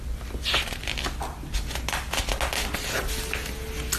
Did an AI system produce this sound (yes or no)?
no